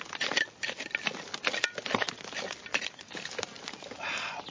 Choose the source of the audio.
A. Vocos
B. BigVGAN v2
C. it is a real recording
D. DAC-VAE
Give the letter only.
C